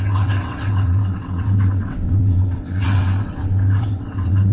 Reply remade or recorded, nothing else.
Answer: remade